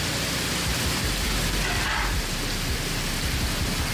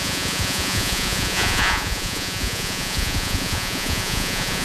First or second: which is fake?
second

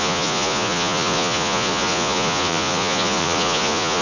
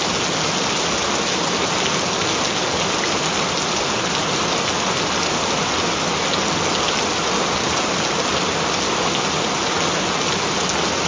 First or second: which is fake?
first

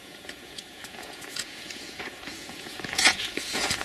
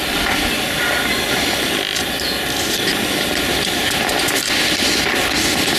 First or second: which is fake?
first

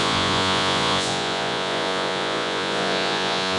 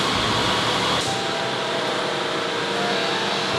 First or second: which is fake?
first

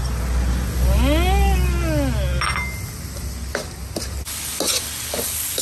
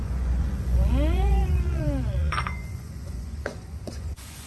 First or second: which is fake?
second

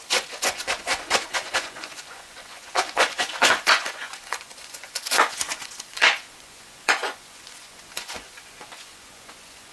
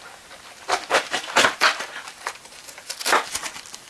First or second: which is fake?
first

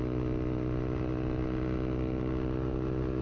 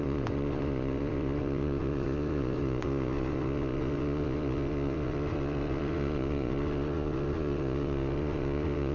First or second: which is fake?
second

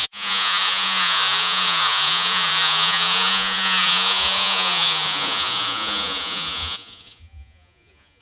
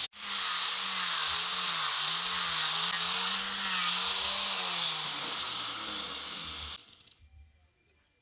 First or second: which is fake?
first